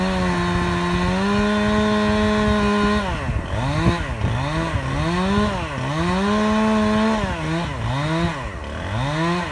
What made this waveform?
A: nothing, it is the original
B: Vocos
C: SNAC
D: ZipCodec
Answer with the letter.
A